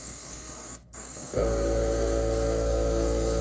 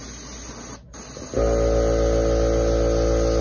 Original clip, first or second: second